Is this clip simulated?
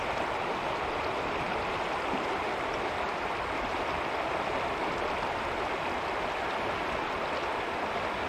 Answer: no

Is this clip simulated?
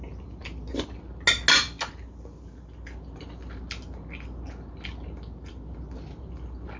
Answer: no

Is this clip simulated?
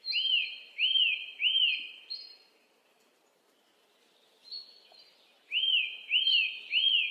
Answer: no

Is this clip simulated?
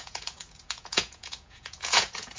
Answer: yes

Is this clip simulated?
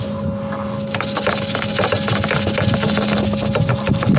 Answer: no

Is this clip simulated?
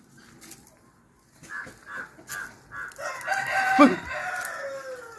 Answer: no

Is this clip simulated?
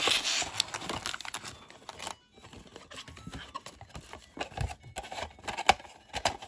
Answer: no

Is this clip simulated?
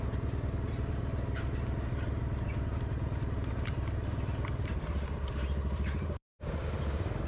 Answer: yes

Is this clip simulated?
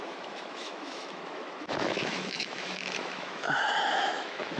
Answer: yes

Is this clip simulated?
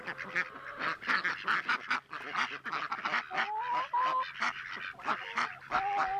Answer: no